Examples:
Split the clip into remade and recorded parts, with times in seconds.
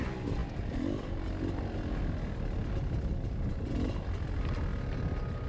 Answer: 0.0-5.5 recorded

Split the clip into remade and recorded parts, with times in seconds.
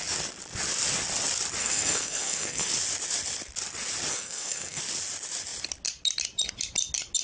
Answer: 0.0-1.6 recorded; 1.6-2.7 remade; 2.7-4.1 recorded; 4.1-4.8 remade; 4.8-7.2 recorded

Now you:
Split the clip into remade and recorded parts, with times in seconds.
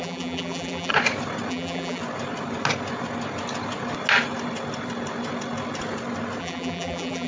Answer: 0.0-0.9 remade; 0.9-1.5 recorded; 1.5-2.0 remade; 2.0-6.4 recorded; 6.4-7.3 remade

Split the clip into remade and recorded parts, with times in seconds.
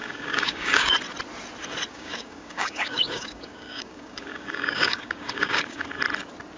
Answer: 0.0-0.9 remade; 0.9-1.9 recorded; 1.9-5.9 remade; 5.9-6.6 recorded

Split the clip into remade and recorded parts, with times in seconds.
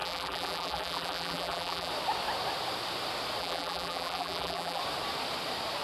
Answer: 0.0-1.9 remade; 1.9-3.4 recorded; 3.4-4.8 remade; 4.8-5.8 recorded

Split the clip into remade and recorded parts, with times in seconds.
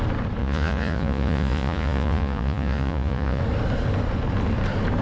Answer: 0.0-0.4 recorded; 0.4-3.4 remade; 3.4-5.0 recorded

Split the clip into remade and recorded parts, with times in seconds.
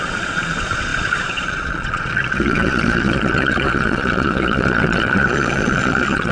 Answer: 0.0-6.3 remade